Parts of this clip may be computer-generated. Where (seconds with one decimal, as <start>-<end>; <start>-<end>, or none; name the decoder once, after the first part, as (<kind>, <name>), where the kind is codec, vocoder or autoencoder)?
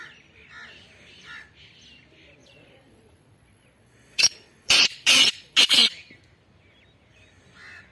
2.4-5.9 (vocoder, Vocos)